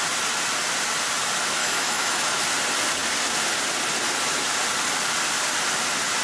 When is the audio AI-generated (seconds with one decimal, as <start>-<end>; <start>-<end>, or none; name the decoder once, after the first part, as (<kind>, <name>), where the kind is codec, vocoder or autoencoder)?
1.6-2.4 (autoencoder, DAC-VAE)